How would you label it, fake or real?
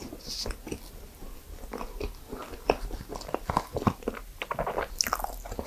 real